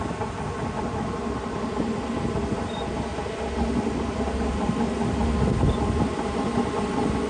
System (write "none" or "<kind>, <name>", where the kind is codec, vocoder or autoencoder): none